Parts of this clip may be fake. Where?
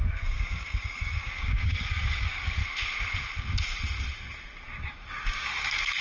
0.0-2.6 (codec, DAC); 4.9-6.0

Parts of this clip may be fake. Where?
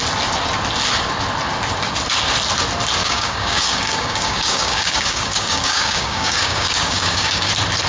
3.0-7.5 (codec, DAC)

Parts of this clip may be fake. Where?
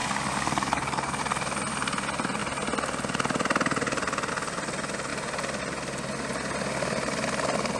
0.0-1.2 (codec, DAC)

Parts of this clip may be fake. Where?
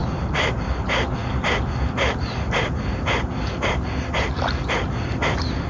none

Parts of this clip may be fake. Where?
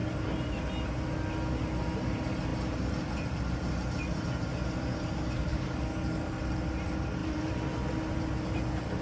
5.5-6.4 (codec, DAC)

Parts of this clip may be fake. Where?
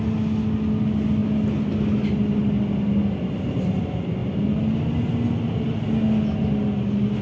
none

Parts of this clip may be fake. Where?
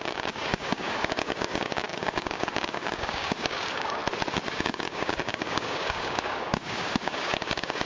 0.0-4.0 (codec, DAC); 4.5-7.9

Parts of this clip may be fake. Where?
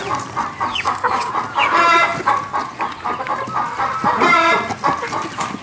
0.7-1.3 (codec, DAC)